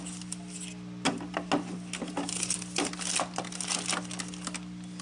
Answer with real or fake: real